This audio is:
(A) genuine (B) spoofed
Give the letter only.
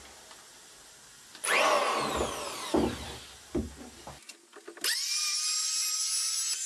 A